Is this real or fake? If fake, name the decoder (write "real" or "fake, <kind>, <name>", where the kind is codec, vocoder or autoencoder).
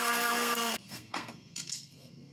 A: fake, codec, SNAC